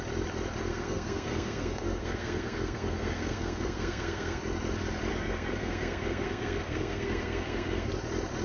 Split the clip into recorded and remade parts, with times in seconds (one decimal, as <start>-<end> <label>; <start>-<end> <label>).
0.0-0.7 recorded; 0.7-4.4 remade; 4.4-5.1 recorded; 5.1-7.9 remade; 7.9-8.4 recorded